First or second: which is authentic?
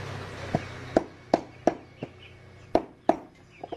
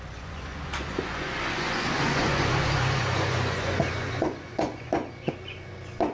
first